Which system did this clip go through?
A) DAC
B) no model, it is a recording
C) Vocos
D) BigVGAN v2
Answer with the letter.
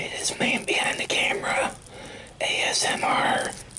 B